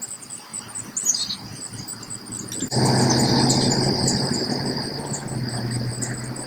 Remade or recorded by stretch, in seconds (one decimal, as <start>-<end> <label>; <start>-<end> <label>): 0.0-6.5 recorded